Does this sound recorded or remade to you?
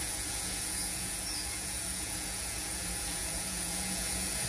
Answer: remade